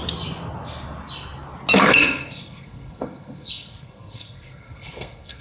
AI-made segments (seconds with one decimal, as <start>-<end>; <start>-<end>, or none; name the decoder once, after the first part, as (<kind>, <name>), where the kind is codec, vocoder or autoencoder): 1.8-5.4 (codec, SNAC)